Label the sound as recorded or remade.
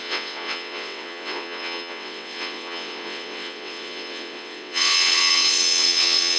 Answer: remade